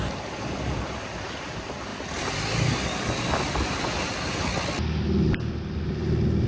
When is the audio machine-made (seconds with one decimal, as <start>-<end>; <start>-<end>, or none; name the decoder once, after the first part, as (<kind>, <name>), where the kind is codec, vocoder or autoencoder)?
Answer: none